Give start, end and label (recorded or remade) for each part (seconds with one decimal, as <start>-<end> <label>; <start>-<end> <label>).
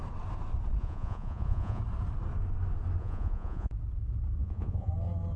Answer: 0.0-0.8 recorded; 0.8-1.8 remade; 1.8-3.0 recorded; 3.0-3.7 remade; 3.7-4.4 recorded; 4.4-4.9 remade; 4.9-5.4 recorded